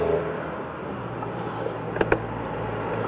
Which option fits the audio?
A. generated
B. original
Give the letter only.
B